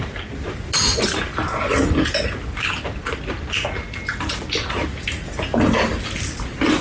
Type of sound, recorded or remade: recorded